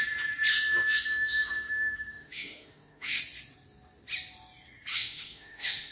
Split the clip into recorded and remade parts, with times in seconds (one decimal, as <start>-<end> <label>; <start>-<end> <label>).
0.0-0.5 recorded; 0.5-3.2 remade; 3.2-4.9 recorded; 4.9-5.9 remade